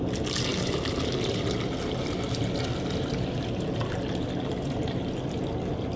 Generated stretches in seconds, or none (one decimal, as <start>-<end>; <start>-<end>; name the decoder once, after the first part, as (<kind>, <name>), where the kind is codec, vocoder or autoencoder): none